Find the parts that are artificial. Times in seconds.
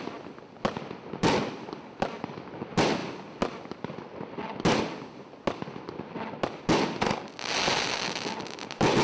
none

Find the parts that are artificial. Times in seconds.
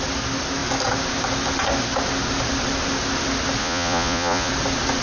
3.6-4.5 (vocoder, Vocos)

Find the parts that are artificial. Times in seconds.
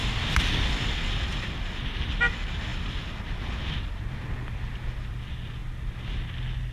none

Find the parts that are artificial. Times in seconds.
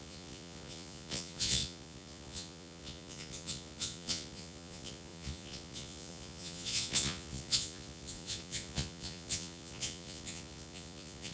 0.0-11.3 (vocoder, Vocos)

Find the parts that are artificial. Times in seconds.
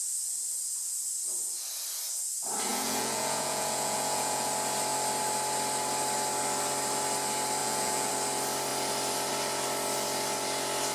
2.7-4.5 (vocoder, Vocos); 7.6-8.1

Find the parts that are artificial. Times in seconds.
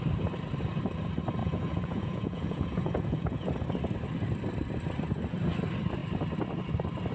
1.4-3.5 (vocoder, Vocos)